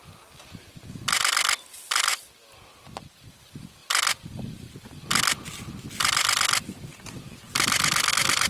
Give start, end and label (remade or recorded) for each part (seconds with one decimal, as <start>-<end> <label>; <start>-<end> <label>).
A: 0.0-8.5 recorded